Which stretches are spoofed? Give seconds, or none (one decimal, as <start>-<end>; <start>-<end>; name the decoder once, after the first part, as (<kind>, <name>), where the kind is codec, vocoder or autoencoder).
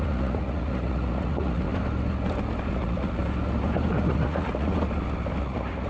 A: 0.0-1.7 (vocoder, Vocos); 2.7-3.2; 4.1-4.7; 5.4-5.9